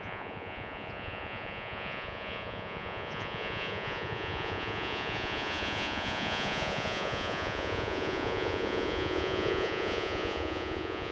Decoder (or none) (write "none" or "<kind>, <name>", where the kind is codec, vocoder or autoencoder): vocoder, Vocos